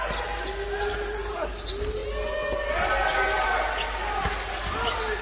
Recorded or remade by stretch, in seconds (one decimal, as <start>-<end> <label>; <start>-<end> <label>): 0.0-5.2 recorded